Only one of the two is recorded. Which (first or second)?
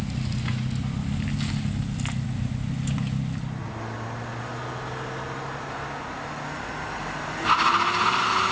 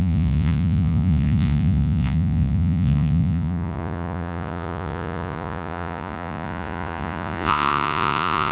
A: first